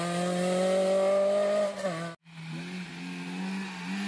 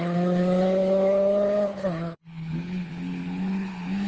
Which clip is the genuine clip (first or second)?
first